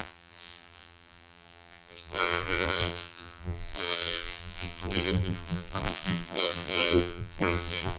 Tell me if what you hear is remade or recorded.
remade